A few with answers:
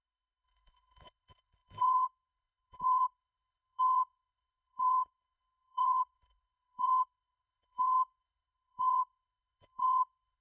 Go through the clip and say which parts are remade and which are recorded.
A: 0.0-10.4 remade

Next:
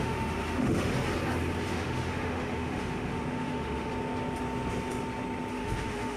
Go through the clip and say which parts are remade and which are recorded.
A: 0.0-0.9 remade; 0.9-1.7 recorded; 1.7-3.9 remade; 3.9-5.5 recorded; 5.5-6.2 remade

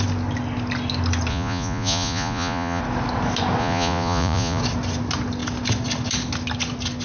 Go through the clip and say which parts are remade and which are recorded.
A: 0.0-1.3 recorded; 1.3-2.8 remade; 2.8-3.6 recorded; 3.6-4.6 remade; 4.6-7.0 recorded

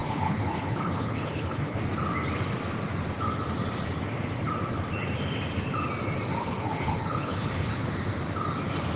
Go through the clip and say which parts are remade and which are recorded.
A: 0.0-1.8 remade; 1.8-6.4 recorded; 6.4-7.9 remade; 7.9-9.0 recorded

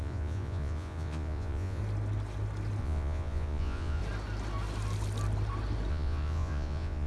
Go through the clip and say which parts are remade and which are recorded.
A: 0.0-1.8 remade; 1.8-2.8 recorded; 2.8-4.0 remade; 4.0-5.9 recorded; 5.9-7.1 remade

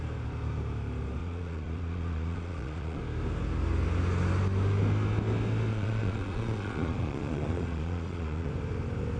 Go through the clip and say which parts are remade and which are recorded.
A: 0.0-1.2 recorded; 1.2-3.0 remade; 3.0-5.7 recorded; 5.7-8.5 remade; 8.5-9.2 recorded

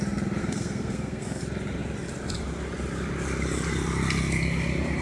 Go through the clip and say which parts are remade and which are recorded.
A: 0.0-0.4 recorded; 0.4-1.4 remade; 1.4-5.0 recorded